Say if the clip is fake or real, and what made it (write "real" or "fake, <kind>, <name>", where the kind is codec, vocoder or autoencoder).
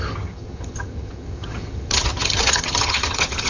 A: fake, vocoder, HiFi-GAN